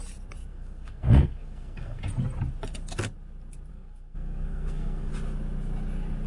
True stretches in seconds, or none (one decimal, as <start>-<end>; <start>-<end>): 0.0-0.5; 2.0-3.7; 5.1-6.3